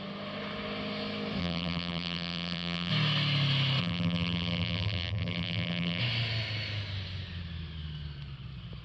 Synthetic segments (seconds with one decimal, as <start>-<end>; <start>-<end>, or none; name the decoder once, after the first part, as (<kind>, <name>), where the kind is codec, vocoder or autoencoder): 1.4-2.9 (vocoder, BigVGAN v2); 3.8-6.0